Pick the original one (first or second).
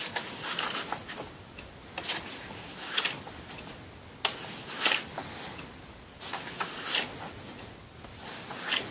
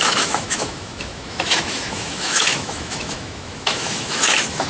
first